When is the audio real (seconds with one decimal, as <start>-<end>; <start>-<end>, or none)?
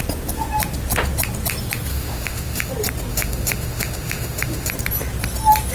0.0-1.9; 2.7-3.1; 4.7-5.7